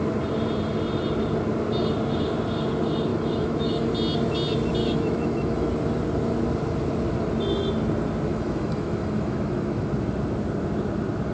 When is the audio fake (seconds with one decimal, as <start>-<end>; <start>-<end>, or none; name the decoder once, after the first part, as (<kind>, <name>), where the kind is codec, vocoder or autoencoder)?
3.1-3.9 (autoencoder, DAC-VAE); 4.8-5.7; 8.3-9.9